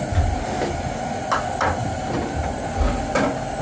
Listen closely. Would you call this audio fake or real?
real